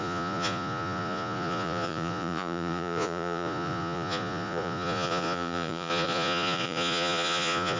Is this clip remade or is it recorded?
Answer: remade